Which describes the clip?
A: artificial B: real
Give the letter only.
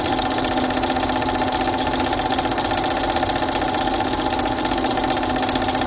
B